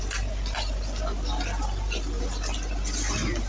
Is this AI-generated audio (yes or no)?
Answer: no